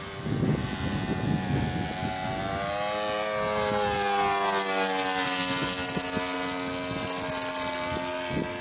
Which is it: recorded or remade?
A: recorded